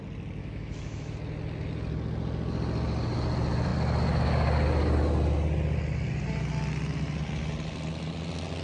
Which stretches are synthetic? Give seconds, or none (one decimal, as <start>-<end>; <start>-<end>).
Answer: 0.4-1.1